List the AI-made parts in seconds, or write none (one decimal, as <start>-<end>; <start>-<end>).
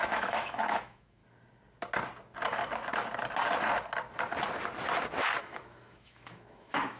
0.0-1.2; 5.4-7.0